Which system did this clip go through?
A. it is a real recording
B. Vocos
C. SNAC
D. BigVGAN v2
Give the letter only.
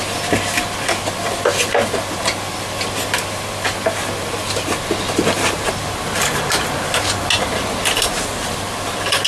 A